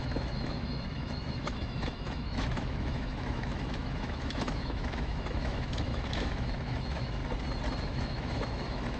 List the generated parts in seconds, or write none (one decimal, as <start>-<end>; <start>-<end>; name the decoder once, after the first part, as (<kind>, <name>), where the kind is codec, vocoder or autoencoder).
0.0-7.2 (autoencoder, DAC-VAE); 7.8-9.0